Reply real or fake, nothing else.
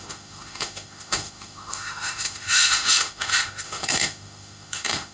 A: fake